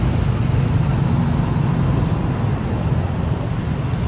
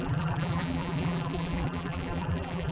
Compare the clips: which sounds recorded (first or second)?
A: first